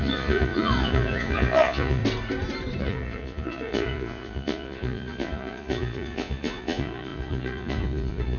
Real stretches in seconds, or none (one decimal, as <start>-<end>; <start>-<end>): 2.0-2.8